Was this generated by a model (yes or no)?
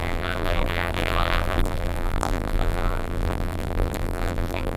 yes